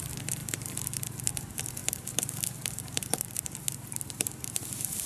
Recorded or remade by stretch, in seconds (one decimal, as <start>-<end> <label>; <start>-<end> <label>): 0.0-5.1 remade